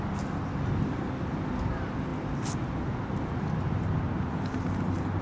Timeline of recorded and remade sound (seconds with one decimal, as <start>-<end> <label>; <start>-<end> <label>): 0.0-5.2 recorded